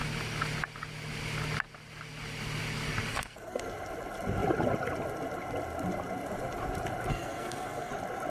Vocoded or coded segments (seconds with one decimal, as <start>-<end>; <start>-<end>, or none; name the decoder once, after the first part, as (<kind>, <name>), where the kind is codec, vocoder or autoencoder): 3.1-3.6 (codec, SNAC); 7.1-7.9